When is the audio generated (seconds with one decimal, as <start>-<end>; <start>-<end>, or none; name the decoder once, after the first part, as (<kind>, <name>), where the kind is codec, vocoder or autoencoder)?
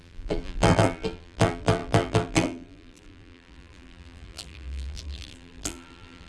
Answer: 0.0-6.3 (vocoder, BigVGAN v2)